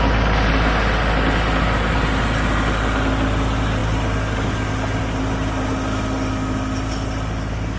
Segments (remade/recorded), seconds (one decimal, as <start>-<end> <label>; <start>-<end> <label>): 0.0-7.8 recorded